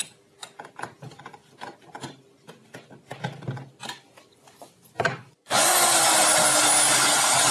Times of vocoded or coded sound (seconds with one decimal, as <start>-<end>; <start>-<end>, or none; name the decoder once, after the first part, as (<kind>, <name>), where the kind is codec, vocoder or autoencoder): 4.3-5.9 (vocoder, Vocos)